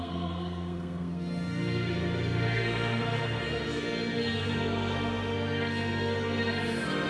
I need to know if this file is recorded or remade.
remade